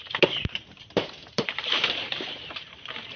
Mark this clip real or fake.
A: fake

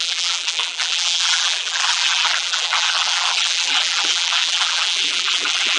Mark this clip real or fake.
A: fake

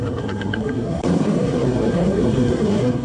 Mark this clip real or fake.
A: fake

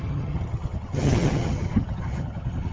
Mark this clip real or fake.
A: fake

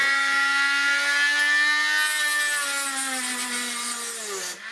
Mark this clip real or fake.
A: real